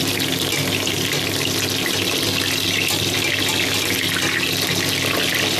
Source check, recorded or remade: recorded